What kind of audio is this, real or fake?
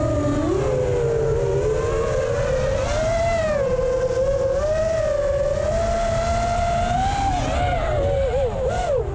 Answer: real